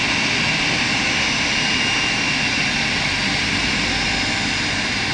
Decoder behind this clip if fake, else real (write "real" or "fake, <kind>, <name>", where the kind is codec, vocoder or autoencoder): real